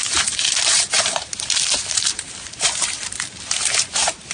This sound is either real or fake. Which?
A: fake